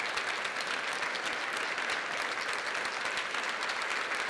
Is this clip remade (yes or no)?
no